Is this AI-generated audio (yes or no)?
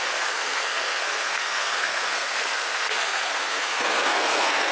yes